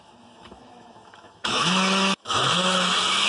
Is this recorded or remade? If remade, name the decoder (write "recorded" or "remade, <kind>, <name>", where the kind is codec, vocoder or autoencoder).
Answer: remade, autoencoder, DAC-VAE